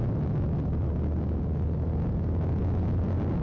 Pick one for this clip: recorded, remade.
recorded